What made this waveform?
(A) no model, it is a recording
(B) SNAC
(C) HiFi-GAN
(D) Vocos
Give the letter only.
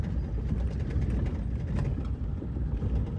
A